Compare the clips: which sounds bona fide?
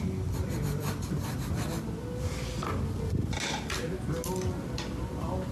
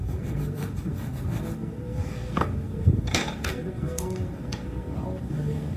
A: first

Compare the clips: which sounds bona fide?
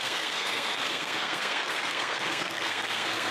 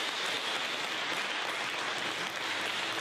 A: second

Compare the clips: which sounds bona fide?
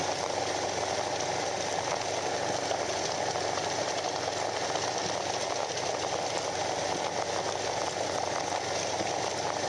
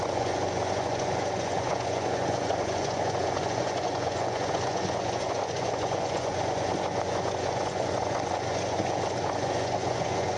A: first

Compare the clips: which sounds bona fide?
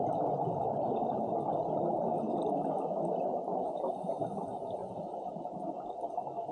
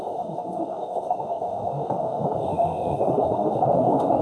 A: first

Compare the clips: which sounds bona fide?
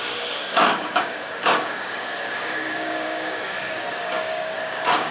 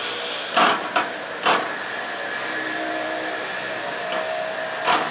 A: second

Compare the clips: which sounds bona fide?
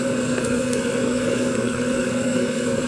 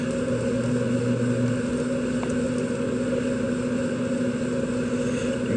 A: second